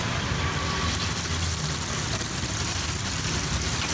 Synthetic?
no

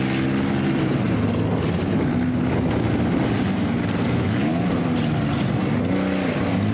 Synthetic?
no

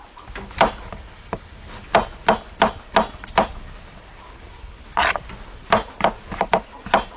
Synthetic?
no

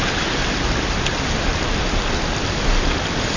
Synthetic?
yes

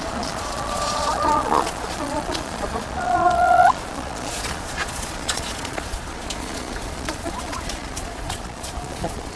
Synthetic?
yes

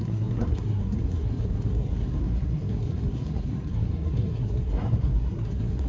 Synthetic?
yes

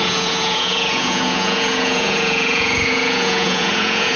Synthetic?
yes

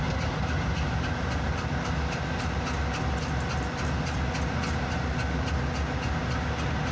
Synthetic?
no